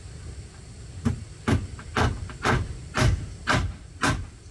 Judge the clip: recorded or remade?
remade